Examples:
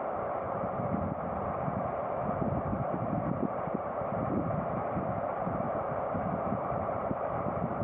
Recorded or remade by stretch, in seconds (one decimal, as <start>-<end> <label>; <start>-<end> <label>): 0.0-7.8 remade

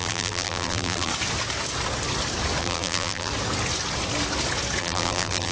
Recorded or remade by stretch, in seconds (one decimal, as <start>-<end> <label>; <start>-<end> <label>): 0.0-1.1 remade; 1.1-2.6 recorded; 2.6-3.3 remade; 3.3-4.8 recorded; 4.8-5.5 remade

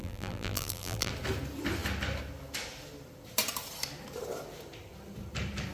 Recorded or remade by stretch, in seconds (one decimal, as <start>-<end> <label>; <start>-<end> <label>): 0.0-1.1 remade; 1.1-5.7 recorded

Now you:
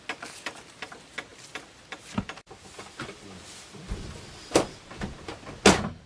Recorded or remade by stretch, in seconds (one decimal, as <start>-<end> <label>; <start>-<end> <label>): 0.0-1.3 recorded; 1.3-5.0 remade; 5.0-6.1 recorded

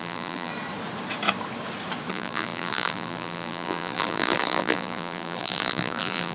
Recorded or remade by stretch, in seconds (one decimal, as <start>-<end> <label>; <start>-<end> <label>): 0.0-0.5 remade; 0.5-2.1 recorded; 2.1-6.3 remade

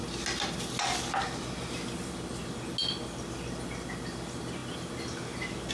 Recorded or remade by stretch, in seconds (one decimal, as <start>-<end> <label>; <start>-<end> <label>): 0.0-5.7 recorded

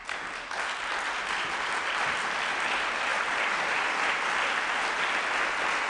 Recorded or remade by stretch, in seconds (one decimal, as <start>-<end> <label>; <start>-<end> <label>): 0.0-1.4 recorded; 1.4-3.1 remade; 3.1-3.7 recorded; 3.7-5.9 remade